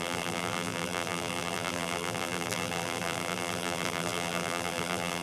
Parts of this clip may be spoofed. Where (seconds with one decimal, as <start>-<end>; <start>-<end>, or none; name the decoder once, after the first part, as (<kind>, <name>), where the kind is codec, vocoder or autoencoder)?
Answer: 0.0-5.2 (vocoder, BigVGAN v2)